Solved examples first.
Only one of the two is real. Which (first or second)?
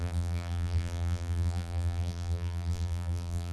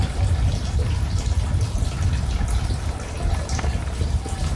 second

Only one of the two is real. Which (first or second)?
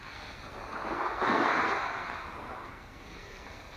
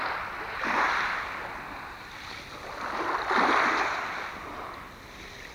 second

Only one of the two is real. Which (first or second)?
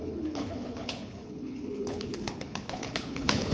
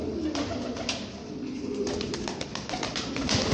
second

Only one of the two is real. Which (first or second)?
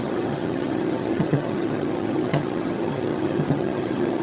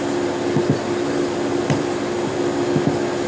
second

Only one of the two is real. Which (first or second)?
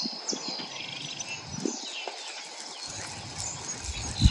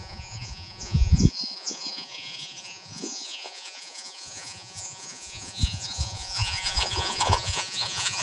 first